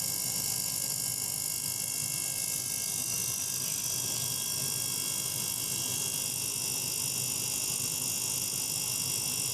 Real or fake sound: real